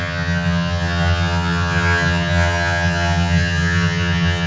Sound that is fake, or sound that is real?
fake